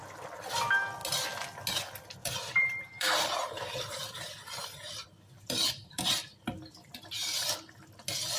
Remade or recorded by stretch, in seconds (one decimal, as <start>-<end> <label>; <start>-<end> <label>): 0.0-2.2 recorded; 2.2-6.9 remade; 6.9-8.4 recorded

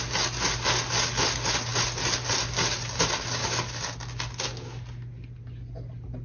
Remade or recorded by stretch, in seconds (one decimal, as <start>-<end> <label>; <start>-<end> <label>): 0.0-6.2 recorded

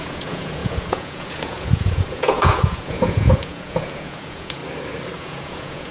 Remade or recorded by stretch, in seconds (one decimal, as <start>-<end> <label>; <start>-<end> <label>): 0.0-4.6 remade; 4.6-5.2 recorded; 5.2-5.9 remade

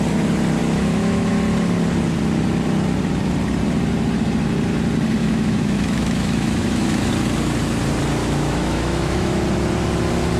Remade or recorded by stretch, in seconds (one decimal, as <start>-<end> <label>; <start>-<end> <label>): 0.0-0.6 recorded; 0.6-1.3 remade; 1.3-5.2 recorded; 5.2-7.1 remade; 7.1-8.2 recorded; 8.2-9.4 remade; 9.4-10.4 recorded